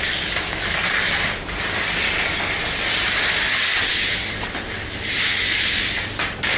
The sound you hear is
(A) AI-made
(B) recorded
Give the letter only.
B